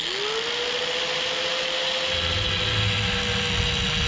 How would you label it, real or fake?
real